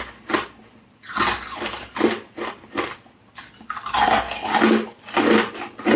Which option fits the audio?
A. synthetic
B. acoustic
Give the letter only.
B